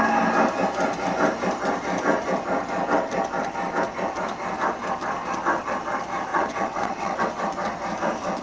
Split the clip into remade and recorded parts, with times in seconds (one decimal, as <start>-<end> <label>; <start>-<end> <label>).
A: 0.0-6.3 recorded; 6.3-7.2 remade; 7.2-8.4 recorded